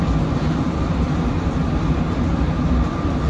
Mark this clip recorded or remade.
remade